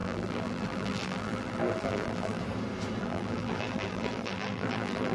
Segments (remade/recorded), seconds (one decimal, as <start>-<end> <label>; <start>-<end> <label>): 0.0-2.4 remade; 2.4-3.0 recorded; 3.0-5.1 remade